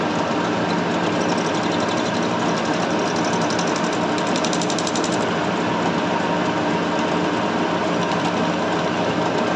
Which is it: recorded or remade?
recorded